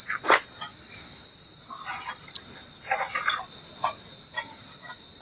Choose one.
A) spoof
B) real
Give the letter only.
B